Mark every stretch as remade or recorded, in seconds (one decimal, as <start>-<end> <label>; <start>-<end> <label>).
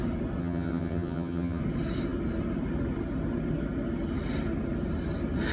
0.0-0.4 recorded; 0.4-1.6 remade; 1.6-5.5 recorded